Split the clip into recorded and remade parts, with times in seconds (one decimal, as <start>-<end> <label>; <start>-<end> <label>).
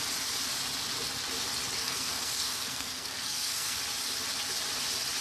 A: 0.0-1.8 recorded; 1.8-3.8 remade; 3.8-5.2 recorded